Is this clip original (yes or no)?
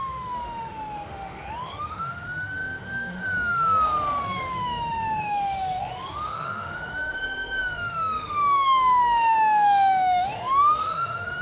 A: no